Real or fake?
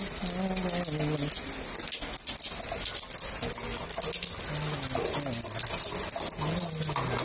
real